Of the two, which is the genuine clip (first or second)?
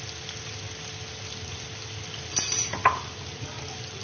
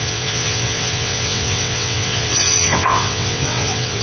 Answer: first